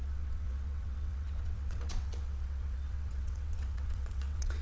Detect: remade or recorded remade